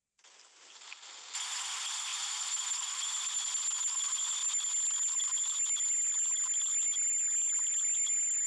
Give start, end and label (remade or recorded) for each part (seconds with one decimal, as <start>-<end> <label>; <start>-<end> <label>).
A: 0.0-8.5 recorded